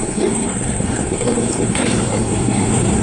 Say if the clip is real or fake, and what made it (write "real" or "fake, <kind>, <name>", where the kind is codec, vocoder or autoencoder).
fake, codec, SNAC